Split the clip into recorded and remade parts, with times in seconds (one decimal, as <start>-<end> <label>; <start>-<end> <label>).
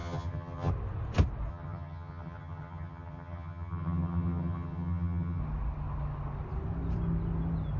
0.0-0.7 remade; 0.7-1.5 recorded; 1.5-5.4 remade; 5.4-7.8 recorded